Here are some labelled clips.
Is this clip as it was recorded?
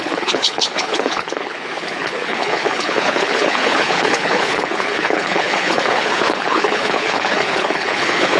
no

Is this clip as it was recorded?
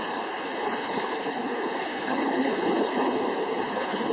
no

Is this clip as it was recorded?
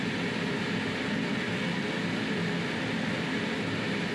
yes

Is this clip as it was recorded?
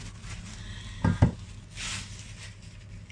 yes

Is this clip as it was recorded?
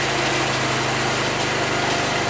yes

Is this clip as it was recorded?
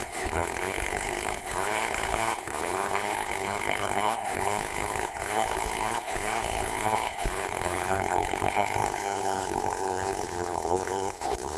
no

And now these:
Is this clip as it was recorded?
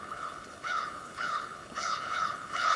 no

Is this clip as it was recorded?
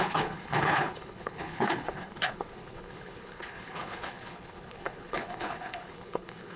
no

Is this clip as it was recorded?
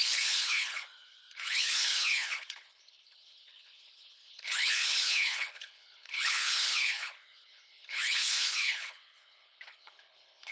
no